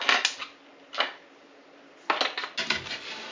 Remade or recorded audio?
recorded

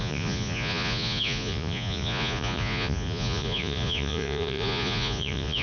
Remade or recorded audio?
remade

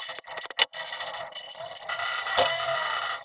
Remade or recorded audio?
recorded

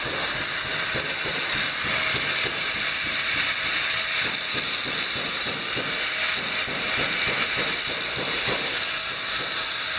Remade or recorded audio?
recorded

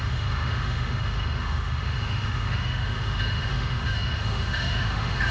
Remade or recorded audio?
remade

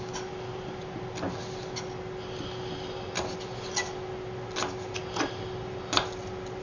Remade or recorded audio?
recorded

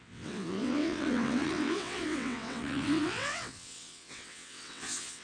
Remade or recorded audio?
remade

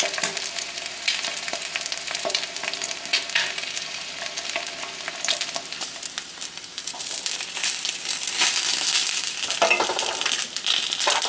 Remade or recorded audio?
remade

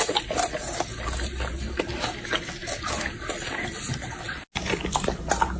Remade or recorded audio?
recorded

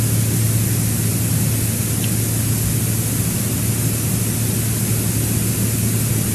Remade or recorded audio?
recorded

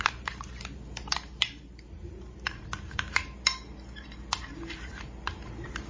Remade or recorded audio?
remade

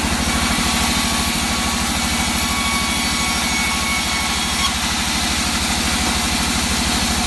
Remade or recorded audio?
recorded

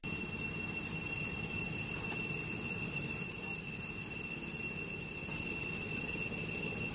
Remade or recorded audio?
recorded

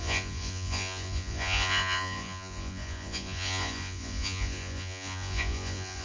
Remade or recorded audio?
remade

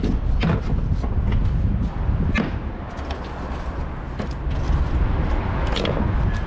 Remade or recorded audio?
recorded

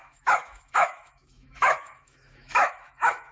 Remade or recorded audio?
remade